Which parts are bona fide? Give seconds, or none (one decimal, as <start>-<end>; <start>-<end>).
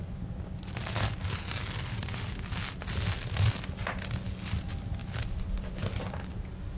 0.0-6.8